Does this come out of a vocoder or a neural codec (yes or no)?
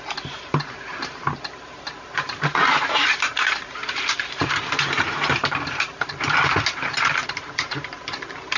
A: yes